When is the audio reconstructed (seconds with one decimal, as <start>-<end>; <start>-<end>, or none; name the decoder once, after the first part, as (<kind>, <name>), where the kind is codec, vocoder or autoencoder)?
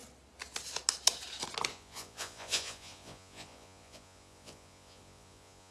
1.7-5.7 (vocoder, Vocos)